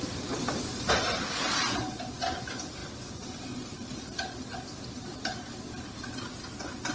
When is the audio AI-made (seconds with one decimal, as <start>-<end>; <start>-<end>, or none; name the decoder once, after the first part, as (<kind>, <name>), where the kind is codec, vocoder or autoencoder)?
none